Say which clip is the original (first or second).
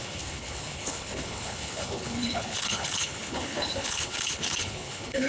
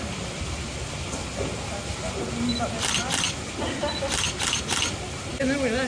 second